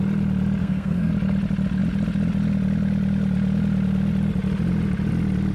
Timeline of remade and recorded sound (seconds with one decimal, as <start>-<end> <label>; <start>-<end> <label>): 0.0-0.6 recorded; 0.6-1.1 remade; 1.1-5.5 recorded